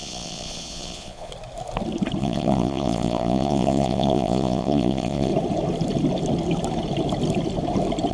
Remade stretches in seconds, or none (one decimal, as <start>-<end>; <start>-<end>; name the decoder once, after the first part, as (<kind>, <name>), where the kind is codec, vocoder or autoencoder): 0.0-1.3 (vocoder, Vocos); 2.2-5.3